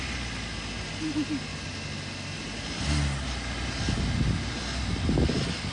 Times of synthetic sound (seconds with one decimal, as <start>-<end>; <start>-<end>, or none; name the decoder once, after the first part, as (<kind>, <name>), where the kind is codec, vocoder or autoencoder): none